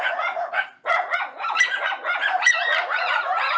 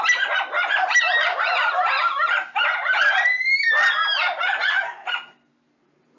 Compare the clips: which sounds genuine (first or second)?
second